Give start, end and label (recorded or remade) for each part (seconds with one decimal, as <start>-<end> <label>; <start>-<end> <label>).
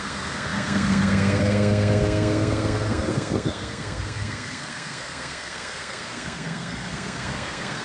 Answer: 0.0-7.8 remade